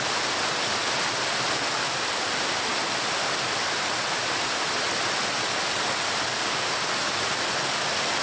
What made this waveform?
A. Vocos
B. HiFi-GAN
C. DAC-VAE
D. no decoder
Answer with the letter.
D